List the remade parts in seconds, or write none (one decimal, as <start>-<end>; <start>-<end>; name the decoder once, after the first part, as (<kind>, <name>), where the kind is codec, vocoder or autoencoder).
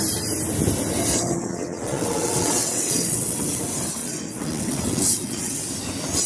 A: 1.1-3.6 (vocoder, WaveNeXt); 4.0-5.6